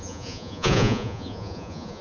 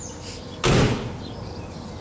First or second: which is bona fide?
second